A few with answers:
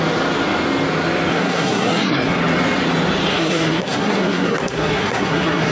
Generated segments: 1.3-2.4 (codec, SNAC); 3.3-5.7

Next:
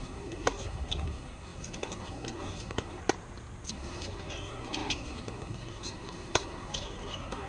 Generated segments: 0.0-3.0 (codec, SNAC); 3.7-7.5